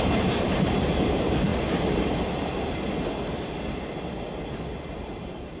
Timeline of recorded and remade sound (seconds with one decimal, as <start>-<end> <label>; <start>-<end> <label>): 0.0-1.5 remade; 1.5-4.9 recorded; 4.9-5.6 remade